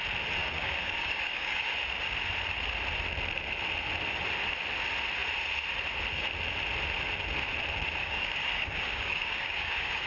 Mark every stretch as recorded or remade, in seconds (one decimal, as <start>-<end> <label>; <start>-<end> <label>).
0.0-0.4 recorded; 0.4-1.7 remade; 1.7-8.0 recorded; 8.0-10.1 remade